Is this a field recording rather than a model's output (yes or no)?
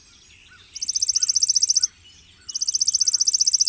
yes